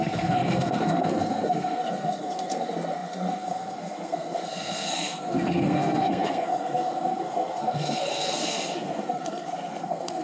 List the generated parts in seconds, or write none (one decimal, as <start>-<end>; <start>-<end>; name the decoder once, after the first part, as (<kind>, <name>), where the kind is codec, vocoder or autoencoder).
0.0-10.2 (codec, SNAC)